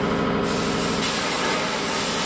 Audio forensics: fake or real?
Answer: real